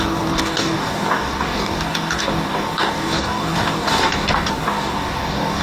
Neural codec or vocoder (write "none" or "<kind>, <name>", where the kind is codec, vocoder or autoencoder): codec, DAC